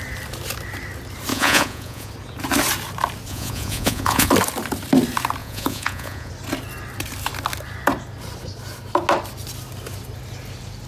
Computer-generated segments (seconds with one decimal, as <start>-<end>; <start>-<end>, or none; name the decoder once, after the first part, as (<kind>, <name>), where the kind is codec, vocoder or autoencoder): 1.3-2.1 (vocoder, Vocos); 3.3-4.3; 5.4-6.3